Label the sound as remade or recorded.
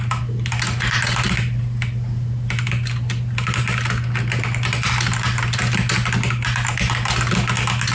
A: recorded